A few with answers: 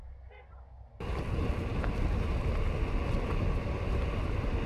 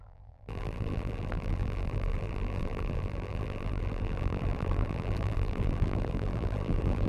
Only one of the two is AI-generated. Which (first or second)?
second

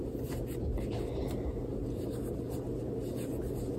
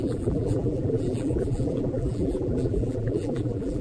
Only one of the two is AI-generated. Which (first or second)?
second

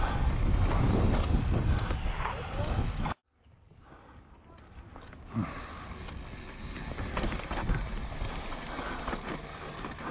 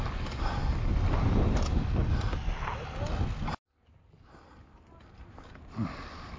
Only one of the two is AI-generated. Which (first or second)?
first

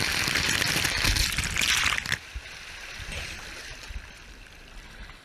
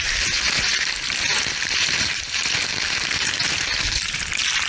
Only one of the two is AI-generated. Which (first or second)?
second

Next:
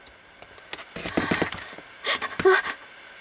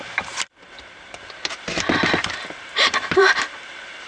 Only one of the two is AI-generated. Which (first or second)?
second